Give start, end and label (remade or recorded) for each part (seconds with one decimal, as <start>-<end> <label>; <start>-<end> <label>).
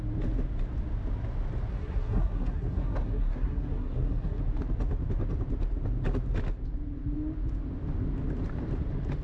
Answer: 0.0-1.7 recorded; 1.7-4.4 remade; 4.4-9.2 recorded